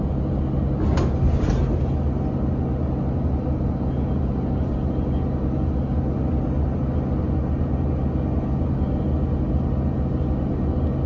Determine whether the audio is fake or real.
real